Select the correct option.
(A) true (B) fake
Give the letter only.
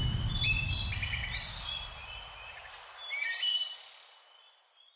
A